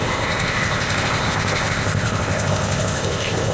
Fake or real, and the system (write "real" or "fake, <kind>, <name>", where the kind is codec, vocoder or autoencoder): fake, codec, ZipCodec